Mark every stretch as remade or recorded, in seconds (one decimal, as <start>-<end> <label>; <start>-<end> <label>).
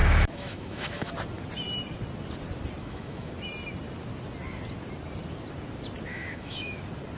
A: 0.0-1.1 remade; 1.1-2.8 recorded; 2.8-3.3 remade; 3.3-6.1 recorded; 6.1-6.8 remade; 6.8-7.2 recorded